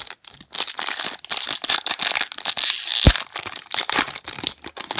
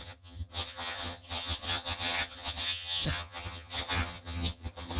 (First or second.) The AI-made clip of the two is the second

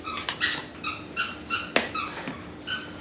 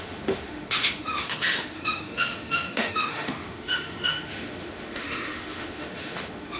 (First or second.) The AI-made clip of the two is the second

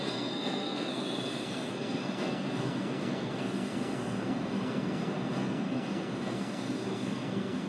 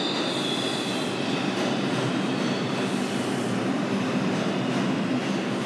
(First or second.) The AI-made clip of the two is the first